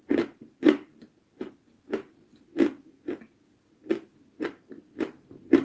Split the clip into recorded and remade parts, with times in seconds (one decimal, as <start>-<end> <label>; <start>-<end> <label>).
0.0-2.3 remade; 2.3-4.4 recorded; 4.4-5.6 remade